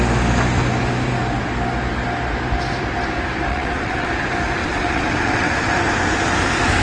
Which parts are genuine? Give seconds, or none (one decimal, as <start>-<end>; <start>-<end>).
0.0-3.5; 4.1-4.6; 5.5-6.8